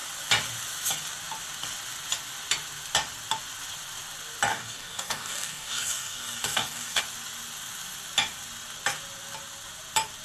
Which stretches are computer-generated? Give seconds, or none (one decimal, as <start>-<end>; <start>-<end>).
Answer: 4.5-7.0